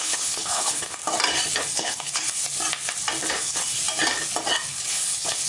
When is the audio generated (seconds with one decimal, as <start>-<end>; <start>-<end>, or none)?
0.0-1.0; 1.6-2.4; 3.3-3.8; 4.7-5.5